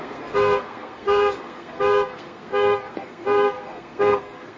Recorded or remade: remade